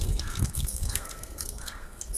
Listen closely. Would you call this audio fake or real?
fake